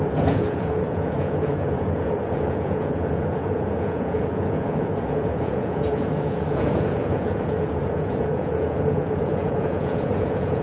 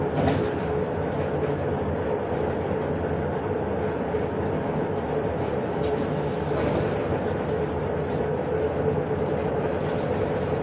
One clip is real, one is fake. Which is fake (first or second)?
first